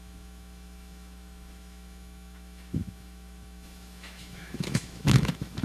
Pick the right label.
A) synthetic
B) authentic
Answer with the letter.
A